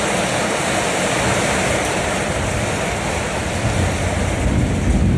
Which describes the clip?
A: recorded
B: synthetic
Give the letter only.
A